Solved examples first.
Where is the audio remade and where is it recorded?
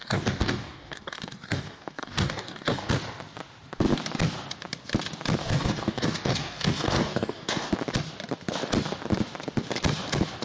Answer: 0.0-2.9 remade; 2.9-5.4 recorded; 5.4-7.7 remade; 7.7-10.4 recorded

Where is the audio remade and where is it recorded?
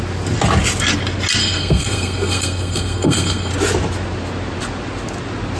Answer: 0.0-1.4 recorded; 1.4-3.5 remade; 3.5-5.6 recorded